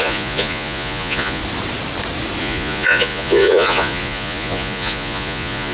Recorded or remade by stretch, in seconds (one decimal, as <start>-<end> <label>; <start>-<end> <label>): 0.0-1.4 remade; 1.4-2.4 recorded; 2.4-5.7 remade